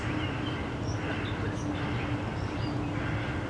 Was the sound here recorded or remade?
recorded